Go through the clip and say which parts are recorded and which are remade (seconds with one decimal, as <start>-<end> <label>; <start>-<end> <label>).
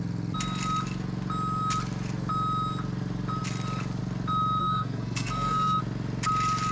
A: 0.0-4.6 recorded; 4.6-5.8 remade; 5.8-6.7 recorded